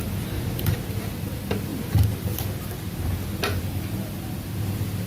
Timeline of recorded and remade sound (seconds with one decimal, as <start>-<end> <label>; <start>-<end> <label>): 0.0-5.1 recorded